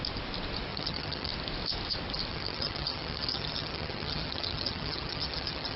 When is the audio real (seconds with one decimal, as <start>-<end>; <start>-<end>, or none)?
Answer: 0.0-0.7; 1.3-2.3